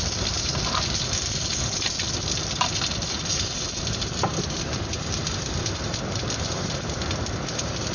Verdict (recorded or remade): remade